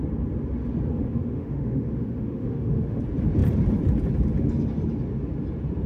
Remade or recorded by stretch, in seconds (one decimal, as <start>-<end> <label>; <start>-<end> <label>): 0.0-0.9 recorded; 0.9-3.0 remade; 3.0-5.9 recorded